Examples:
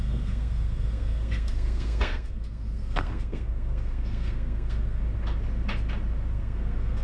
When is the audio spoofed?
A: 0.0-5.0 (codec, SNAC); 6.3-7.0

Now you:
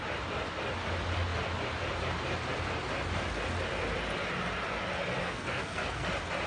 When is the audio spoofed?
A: 5.2-6.1 (codec, SNAC)

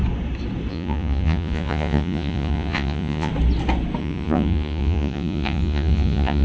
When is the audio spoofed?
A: 0.7-3.3 (vocoder, Vocos); 4.0-6.4

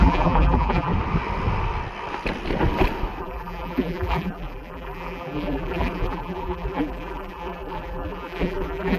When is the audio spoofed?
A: 0.0-0.9 (vocoder, BigVGAN v2); 3.2-9.0

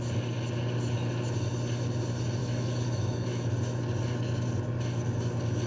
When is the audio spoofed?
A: 2.4-3.5 (autoencoder, DAC-VAE)

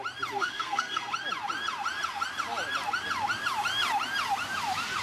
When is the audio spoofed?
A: 0.4-1.1 (codec, SNAC)